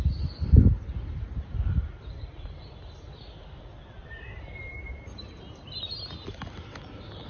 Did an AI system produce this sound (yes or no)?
no